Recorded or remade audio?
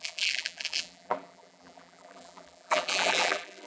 remade